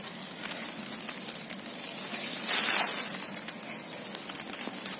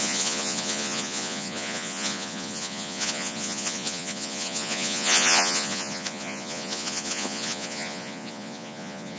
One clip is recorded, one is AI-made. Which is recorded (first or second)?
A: first